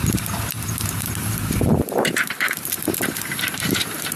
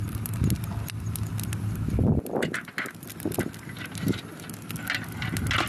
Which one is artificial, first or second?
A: first